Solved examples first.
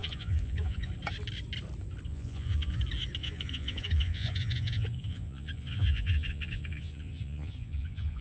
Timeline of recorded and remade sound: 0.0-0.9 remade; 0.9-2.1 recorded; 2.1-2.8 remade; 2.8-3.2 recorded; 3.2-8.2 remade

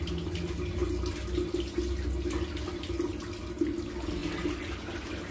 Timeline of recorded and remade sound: 0.0-5.3 recorded